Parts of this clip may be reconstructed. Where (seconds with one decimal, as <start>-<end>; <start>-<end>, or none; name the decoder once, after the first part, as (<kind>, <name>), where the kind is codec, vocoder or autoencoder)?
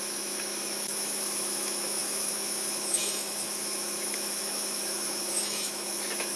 0.0-6.4 (autoencoder, DAC-VAE)